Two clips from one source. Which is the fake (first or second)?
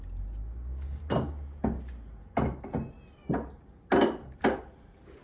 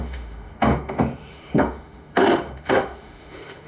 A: second